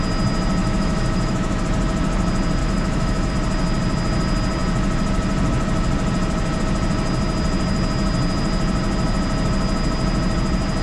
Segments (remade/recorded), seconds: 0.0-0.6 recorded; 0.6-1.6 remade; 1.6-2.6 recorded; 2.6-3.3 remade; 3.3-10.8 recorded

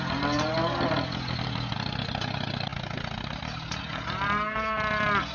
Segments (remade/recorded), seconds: 0.0-5.3 recorded